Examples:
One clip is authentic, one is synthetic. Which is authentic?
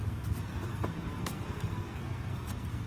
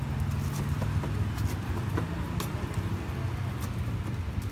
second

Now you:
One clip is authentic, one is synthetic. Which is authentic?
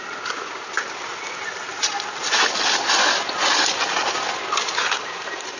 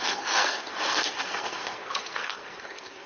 first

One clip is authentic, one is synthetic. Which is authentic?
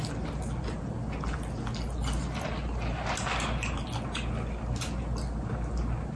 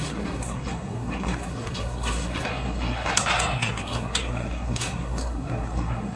first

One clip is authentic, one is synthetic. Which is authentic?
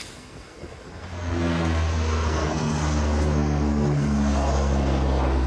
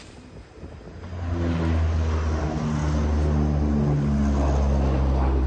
second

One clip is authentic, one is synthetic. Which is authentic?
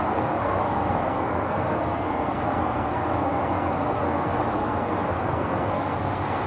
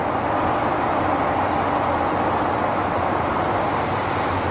second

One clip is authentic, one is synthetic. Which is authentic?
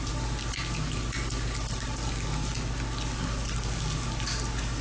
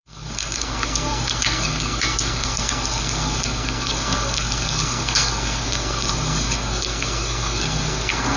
first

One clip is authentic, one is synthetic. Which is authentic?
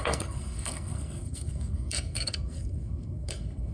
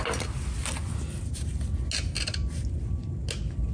second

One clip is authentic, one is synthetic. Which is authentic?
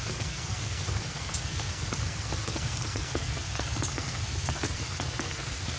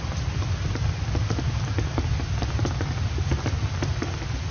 second